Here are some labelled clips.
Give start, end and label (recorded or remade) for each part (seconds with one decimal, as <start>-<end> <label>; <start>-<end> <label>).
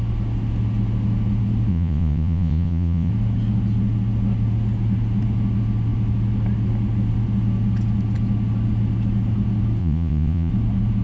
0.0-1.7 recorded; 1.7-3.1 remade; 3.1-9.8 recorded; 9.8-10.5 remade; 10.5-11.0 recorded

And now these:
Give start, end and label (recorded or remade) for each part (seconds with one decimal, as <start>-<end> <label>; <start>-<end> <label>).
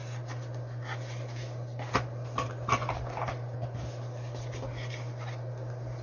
0.0-6.0 recorded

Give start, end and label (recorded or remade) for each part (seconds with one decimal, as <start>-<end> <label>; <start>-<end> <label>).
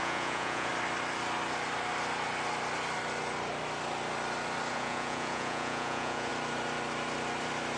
0.0-0.7 remade; 0.7-4.7 recorded; 4.7-6.3 remade; 6.3-7.8 recorded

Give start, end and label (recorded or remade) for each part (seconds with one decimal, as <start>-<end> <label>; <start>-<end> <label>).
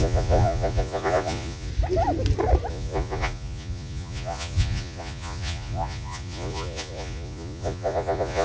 0.0-1.7 remade; 1.7-2.7 recorded; 2.7-8.4 remade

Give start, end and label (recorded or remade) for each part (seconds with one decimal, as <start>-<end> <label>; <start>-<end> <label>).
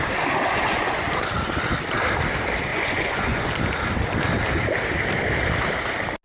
0.0-0.5 recorded; 0.5-1.0 remade; 1.0-2.7 recorded; 2.7-3.5 remade; 3.5-6.2 recorded